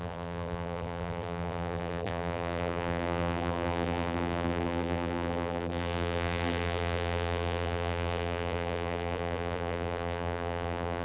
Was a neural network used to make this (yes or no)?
yes